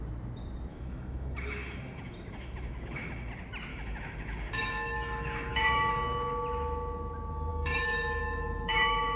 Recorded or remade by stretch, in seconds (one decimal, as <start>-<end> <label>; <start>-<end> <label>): 0.0-0.7 recorded; 0.7-3.3 remade; 3.3-3.7 recorded; 3.7-5.9 remade; 5.9-7.5 recorded; 7.5-9.2 remade